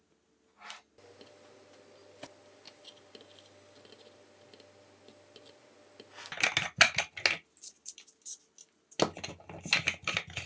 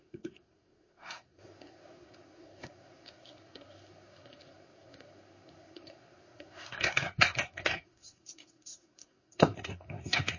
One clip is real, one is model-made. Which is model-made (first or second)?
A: second